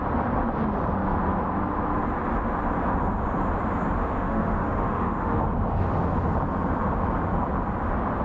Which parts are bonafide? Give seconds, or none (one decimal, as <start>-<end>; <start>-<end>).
0.0-4.0; 5.4-8.2